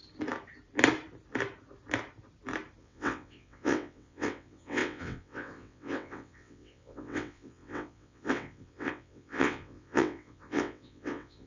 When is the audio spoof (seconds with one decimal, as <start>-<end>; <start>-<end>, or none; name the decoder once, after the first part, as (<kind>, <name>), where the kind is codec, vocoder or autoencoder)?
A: 2.8-11.5 (vocoder, WaveNeXt)